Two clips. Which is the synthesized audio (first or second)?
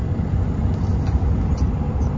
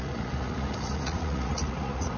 second